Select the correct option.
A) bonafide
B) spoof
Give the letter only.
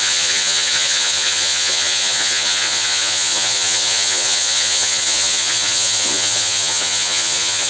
B